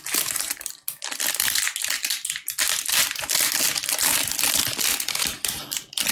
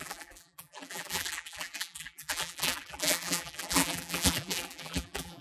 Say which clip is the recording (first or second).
first